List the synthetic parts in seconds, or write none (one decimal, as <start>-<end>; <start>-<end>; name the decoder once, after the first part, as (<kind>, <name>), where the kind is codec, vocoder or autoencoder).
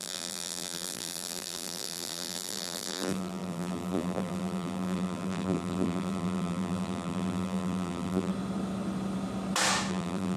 0.0-8.3 (vocoder, BigVGAN v2); 9.9-10.4